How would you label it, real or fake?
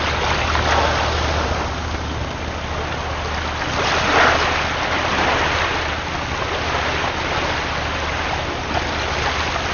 real